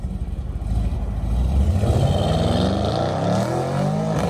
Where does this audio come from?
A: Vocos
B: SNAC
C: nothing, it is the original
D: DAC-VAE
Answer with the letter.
C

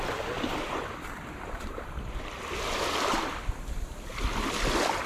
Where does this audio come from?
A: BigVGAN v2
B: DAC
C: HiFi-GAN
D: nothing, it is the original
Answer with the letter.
A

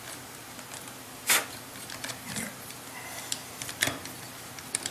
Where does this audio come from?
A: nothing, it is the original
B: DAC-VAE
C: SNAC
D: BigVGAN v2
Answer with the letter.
D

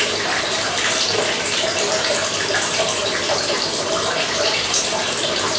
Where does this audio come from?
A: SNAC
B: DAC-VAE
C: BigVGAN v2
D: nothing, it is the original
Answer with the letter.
C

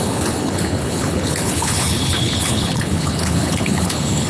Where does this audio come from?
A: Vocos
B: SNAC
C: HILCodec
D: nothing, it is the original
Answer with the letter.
C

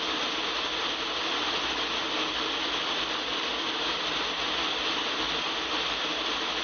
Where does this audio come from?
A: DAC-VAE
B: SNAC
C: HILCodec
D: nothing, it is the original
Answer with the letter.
D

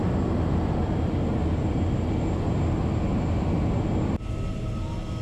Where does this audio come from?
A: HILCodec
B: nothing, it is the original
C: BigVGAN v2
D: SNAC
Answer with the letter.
B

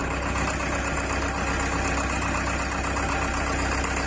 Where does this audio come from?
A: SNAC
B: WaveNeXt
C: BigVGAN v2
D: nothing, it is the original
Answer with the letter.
D